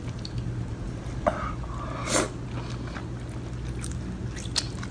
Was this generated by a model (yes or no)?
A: no